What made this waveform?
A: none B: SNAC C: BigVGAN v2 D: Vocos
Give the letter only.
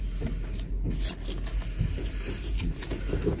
A